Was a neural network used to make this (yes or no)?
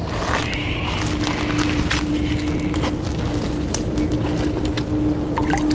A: no